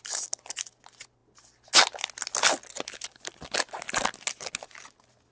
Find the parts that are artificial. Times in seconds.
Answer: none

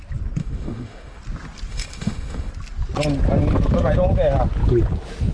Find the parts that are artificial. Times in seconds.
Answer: 0.4-1.2 (autoencoder, DAC-VAE); 1.7-2.5

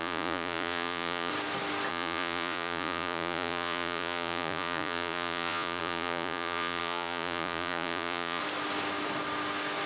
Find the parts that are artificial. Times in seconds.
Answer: 0.0-1.3 (vocoder, Vocos); 1.9-8.4